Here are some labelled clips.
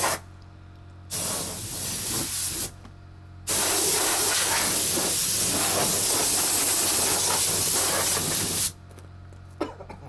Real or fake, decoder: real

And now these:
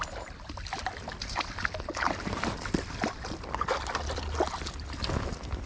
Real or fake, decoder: real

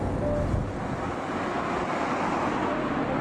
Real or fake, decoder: real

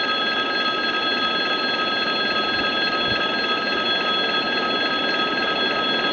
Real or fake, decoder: real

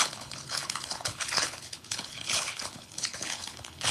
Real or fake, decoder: fake, codec, HILCodec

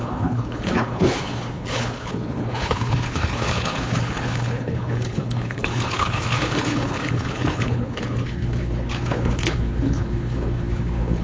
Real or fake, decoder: fake, codec, HILCodec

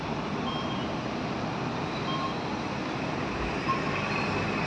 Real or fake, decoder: real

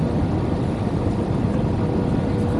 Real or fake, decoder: real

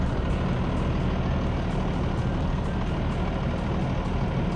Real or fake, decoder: real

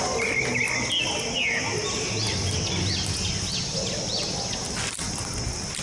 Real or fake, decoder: real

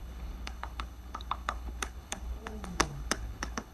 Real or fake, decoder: fake, codec, HILCodec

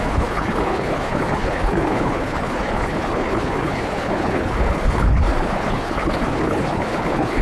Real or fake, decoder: fake, codec, HILCodec